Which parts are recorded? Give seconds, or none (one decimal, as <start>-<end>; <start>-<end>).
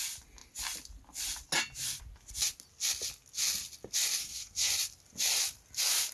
0.0-4.2; 4.7-6.1